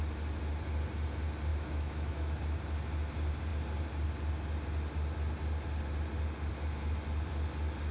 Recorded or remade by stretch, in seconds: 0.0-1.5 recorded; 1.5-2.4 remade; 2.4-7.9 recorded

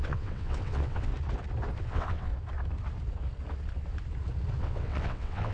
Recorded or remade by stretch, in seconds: 0.0-1.1 remade; 1.1-1.8 recorded; 1.8-2.3 remade; 2.3-4.6 recorded; 4.6-5.5 remade

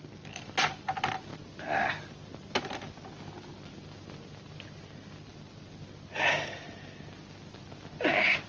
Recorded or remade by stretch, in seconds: 0.0-8.5 recorded

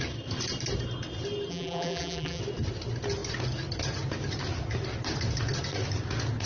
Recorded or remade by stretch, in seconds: 0.0-1.5 recorded; 1.5-2.4 remade; 2.4-6.5 recorded

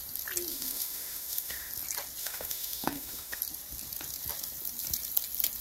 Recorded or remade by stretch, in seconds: 0.0-0.5 recorded; 0.5-1.7 remade; 1.7-2.2 recorded; 2.2-3.4 remade; 3.4-5.6 recorded